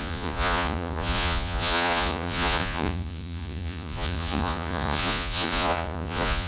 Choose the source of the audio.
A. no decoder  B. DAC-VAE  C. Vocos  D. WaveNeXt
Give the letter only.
C